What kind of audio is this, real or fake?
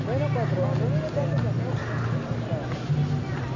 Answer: real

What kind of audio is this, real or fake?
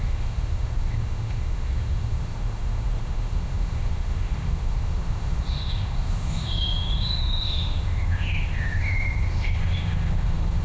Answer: fake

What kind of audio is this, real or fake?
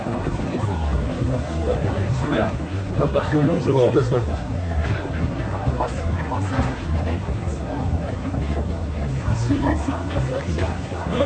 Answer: fake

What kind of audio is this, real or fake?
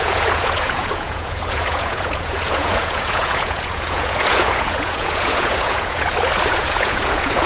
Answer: fake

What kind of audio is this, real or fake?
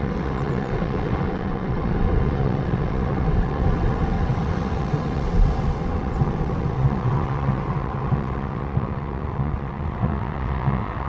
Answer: fake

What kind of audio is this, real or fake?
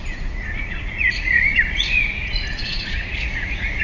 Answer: fake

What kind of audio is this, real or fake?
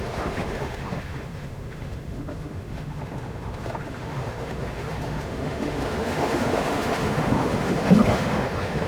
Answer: fake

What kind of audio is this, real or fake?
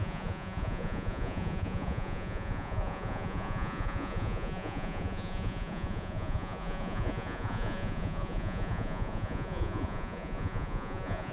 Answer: fake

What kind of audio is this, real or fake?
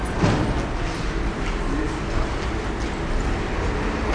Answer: real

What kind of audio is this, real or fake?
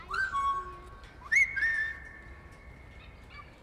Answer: real